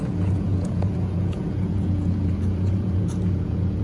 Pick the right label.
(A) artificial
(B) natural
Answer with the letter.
A